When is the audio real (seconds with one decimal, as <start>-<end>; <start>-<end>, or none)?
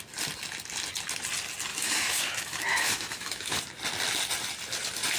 0.0-1.7; 3.6-5.2